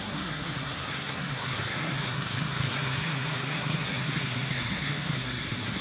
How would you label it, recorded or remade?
remade